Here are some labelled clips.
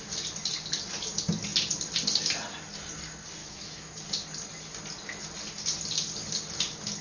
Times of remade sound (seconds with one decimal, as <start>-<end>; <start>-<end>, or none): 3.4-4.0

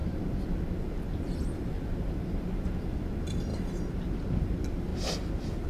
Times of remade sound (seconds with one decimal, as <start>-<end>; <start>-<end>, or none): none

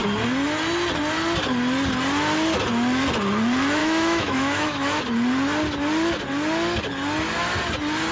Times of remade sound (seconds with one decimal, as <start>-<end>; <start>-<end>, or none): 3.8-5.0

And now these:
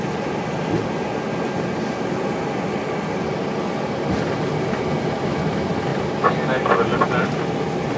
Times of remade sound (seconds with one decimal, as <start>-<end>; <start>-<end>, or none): none

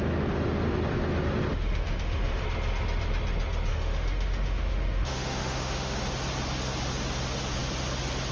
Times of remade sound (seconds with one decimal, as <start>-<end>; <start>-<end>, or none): 1.5-2.4; 3.7-6.0